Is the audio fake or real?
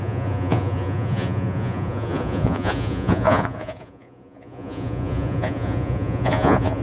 fake